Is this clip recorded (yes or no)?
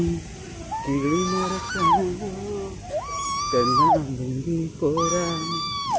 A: yes